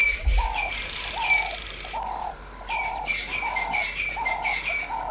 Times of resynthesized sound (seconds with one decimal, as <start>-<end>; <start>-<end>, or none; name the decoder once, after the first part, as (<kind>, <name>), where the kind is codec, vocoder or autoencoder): 0.0-3.1 (vocoder, BigVGAN v2)